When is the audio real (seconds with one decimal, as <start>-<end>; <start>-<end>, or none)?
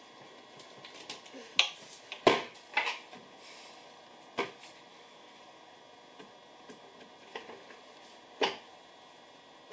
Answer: 0.0-4.9; 5.4-9.7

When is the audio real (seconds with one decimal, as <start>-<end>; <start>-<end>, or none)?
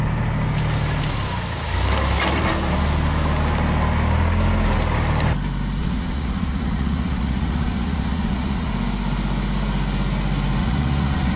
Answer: 0.0-5.8; 8.7-10.6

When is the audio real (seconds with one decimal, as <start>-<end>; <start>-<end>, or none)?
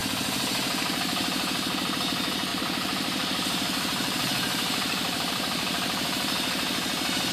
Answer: 0.0-2.5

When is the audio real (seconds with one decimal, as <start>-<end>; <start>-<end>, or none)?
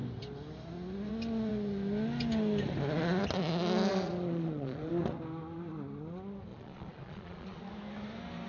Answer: 0.0-3.9; 4.9-6.5; 7.6-8.5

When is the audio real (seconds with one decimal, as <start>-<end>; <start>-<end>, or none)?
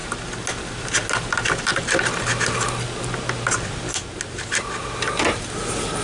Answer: 0.0-6.0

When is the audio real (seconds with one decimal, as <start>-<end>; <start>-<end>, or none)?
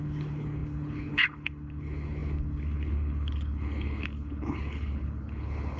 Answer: none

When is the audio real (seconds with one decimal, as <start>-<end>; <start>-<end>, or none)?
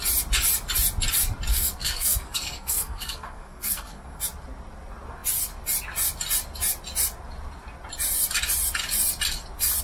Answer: 0.0-1.5; 4.2-9.8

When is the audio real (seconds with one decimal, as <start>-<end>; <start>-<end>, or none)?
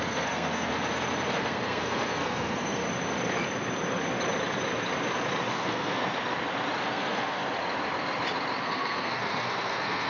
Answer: 0.7-1.3; 2.8-5.5; 6.0-6.8; 7.4-8.6